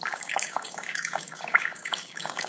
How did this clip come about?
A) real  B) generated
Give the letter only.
B